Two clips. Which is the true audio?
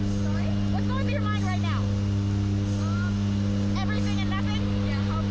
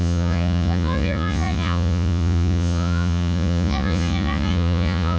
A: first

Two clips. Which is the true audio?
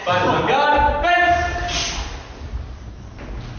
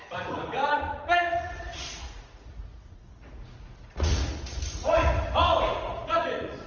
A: first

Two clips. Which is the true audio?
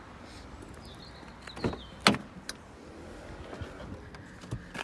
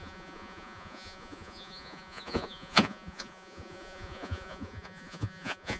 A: first